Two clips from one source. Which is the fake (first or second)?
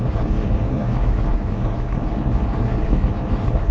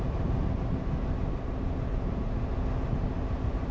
first